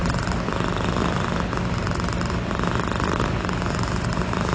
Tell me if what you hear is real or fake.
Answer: real